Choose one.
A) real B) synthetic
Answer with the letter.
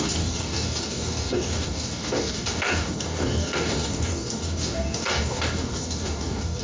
B